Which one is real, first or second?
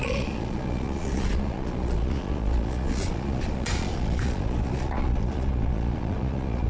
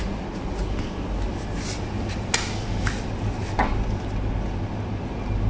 second